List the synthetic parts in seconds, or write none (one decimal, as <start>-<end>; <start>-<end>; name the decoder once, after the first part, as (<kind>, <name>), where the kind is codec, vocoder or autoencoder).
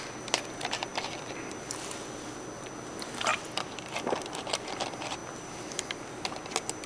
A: none